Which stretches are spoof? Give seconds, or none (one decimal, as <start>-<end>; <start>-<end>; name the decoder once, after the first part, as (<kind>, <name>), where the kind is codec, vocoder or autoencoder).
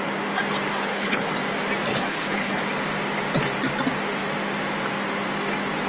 0.7-1.3 (codec, HILCodec); 1.9-2.6